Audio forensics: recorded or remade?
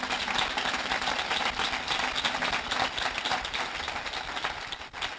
recorded